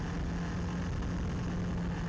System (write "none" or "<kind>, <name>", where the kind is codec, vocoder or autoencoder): none